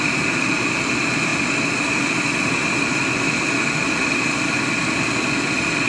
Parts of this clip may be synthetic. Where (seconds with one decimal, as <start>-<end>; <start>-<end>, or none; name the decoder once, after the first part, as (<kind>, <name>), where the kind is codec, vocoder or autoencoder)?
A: none